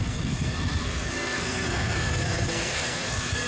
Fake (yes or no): yes